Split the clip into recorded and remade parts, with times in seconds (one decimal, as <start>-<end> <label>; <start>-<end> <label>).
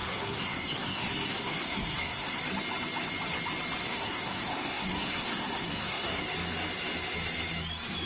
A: 0.0-2.4 remade; 2.4-3.8 recorded; 3.8-6.2 remade; 6.2-8.1 recorded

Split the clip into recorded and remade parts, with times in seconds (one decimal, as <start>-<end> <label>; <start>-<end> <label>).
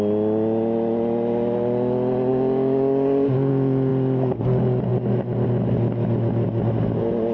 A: 0.0-2.3 recorded; 2.3-3.5 remade; 3.5-7.3 recorded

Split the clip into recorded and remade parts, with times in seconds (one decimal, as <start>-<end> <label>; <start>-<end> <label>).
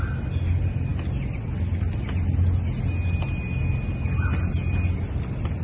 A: 0.0-5.6 recorded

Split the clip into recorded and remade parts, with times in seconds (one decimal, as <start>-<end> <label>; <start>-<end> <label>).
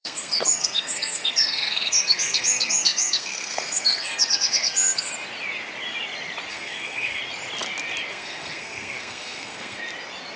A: 0.0-5.1 remade; 5.1-6.5 recorded; 6.5-7.2 remade; 7.2-8.1 recorded; 8.1-9.8 remade; 9.8-10.4 recorded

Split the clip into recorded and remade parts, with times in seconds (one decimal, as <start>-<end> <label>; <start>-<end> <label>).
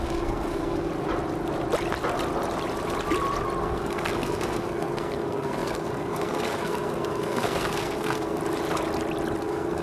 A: 0.0-0.9 remade; 0.9-3.6 recorded; 3.6-8.4 remade; 8.4-9.4 recorded; 9.4-9.8 remade